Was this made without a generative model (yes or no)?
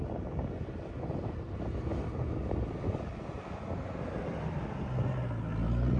yes